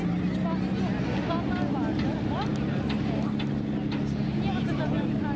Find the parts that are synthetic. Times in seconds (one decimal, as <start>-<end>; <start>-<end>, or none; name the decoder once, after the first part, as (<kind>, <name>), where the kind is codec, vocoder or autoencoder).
none